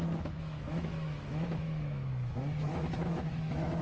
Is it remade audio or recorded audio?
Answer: remade